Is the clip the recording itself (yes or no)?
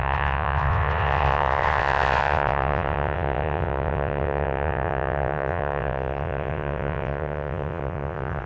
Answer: no